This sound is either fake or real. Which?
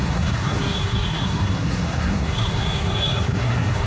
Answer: fake